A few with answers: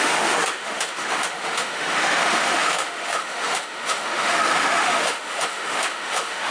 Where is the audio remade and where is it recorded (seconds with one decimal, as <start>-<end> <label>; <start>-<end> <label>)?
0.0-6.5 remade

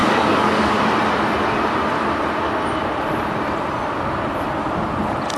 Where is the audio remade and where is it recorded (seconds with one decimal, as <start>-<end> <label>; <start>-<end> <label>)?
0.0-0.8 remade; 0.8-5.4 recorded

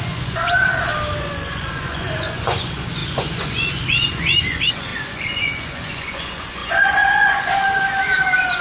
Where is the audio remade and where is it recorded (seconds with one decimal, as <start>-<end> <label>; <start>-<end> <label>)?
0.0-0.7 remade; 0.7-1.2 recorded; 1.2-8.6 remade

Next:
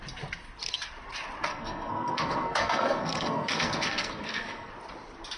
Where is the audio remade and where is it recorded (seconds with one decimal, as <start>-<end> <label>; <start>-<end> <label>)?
0.0-1.5 recorded; 1.5-4.7 remade; 4.7-5.4 recorded

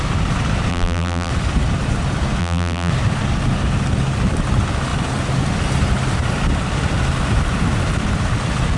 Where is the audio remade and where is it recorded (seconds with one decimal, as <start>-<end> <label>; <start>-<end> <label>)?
0.0-0.7 recorded; 0.7-1.3 remade; 1.3-2.4 recorded; 2.4-2.9 remade; 2.9-8.8 recorded